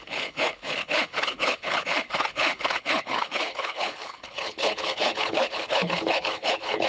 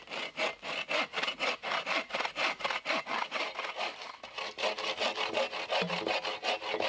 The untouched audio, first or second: second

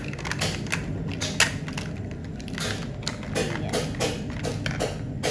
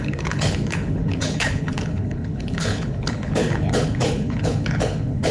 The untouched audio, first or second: first